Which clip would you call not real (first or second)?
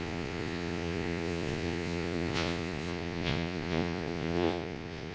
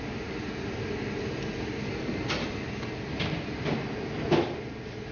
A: first